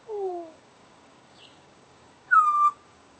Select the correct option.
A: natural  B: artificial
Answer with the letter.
B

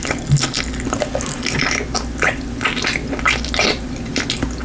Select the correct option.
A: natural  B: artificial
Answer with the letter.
A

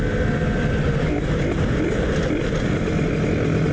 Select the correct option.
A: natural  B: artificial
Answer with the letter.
A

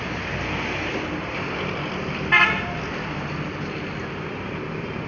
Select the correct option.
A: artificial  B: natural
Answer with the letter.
B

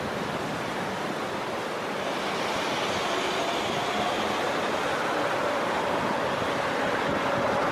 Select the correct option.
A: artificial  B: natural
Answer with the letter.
B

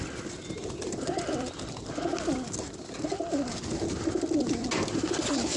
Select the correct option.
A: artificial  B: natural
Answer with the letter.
B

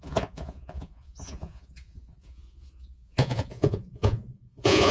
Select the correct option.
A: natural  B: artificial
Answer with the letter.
B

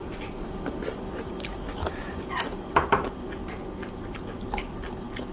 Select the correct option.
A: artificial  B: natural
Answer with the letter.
B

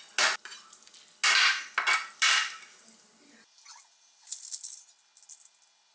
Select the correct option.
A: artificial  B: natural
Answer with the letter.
B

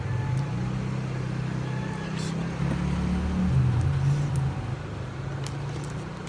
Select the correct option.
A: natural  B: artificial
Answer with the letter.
A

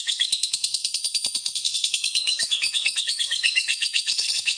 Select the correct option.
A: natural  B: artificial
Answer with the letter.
B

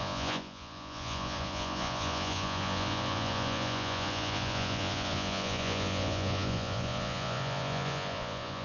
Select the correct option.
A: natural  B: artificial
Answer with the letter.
B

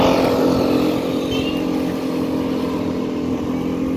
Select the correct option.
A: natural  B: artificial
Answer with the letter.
A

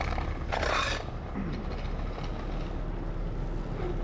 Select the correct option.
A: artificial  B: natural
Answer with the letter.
B